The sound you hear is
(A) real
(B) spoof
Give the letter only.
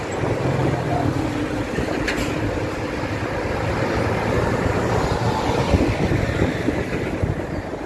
A